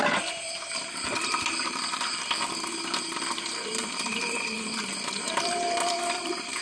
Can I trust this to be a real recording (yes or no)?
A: no